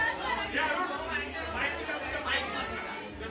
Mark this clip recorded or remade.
recorded